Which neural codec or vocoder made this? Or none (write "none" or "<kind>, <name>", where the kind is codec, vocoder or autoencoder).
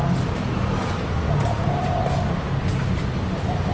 none